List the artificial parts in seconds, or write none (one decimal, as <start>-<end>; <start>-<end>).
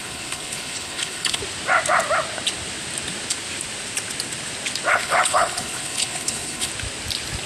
0.0-1.4; 4.9-6.7